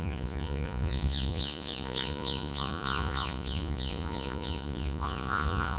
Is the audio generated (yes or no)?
yes